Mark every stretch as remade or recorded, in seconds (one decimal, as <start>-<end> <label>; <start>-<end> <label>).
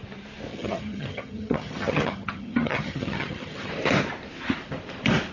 0.0-0.5 recorded; 0.5-3.7 remade; 3.7-5.3 recorded